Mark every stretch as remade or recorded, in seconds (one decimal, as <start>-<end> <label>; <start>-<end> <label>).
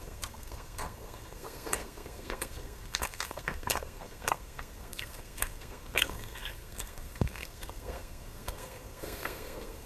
0.0-9.9 remade